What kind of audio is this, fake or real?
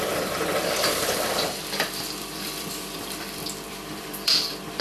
fake